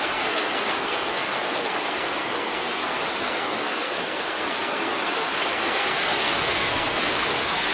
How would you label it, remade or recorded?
remade